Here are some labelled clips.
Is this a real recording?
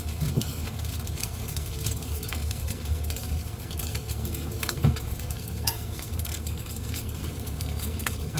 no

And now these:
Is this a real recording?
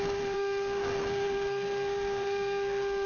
no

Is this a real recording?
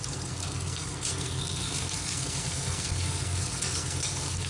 no